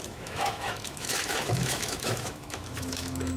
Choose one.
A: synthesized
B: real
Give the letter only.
A